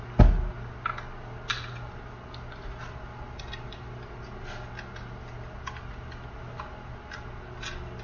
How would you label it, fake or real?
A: real